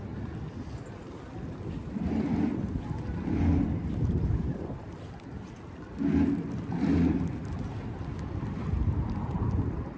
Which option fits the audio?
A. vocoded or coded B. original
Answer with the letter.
B